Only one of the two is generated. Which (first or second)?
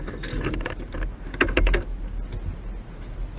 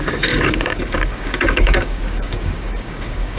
second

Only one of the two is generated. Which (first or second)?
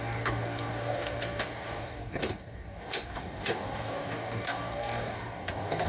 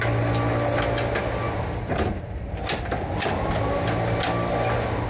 first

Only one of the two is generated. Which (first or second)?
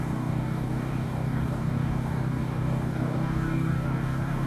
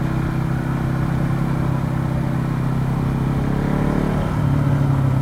first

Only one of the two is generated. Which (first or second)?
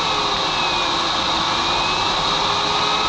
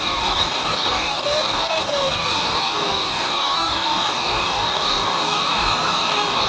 second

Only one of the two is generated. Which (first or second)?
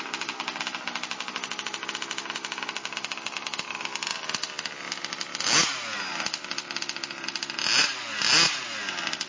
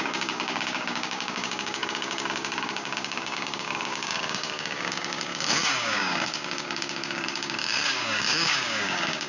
second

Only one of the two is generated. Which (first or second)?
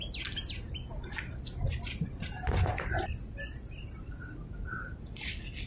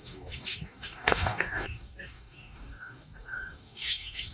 second